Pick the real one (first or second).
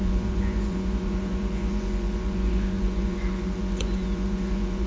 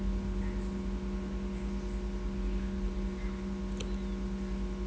second